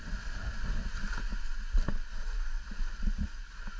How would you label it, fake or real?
real